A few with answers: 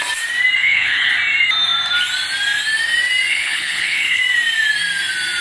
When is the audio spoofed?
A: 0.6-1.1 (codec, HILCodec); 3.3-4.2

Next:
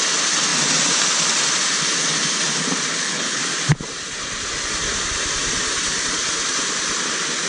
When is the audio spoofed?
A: 2.9-3.4 (codec, HILCodec)

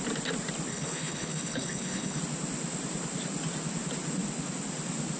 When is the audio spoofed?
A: 0.7-2.2 (codec, HILCodec)

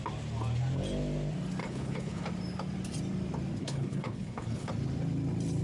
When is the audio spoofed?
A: 1.6-2.3 (codec, HILCodec); 3.6-4.7

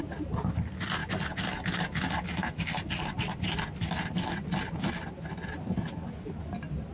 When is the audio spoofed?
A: none